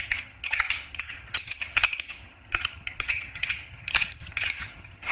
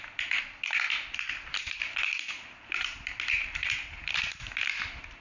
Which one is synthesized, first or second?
first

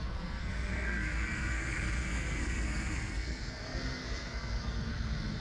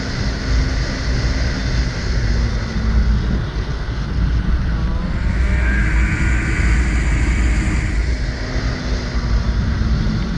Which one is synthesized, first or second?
first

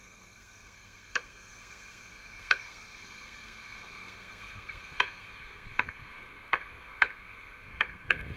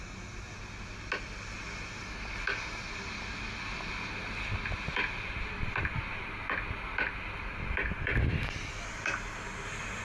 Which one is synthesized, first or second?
first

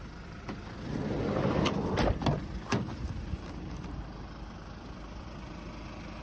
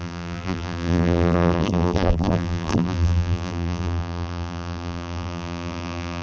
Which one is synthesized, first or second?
second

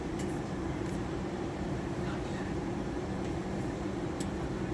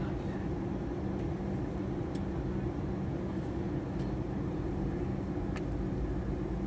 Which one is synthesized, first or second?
first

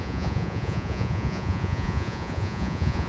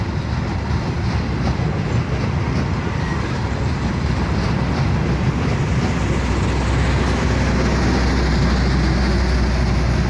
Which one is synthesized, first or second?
first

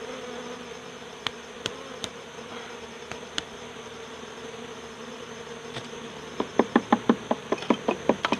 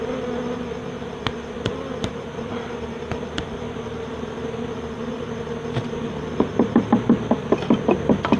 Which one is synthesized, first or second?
first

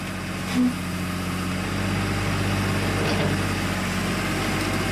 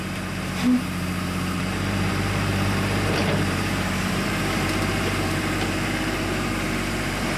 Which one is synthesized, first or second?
second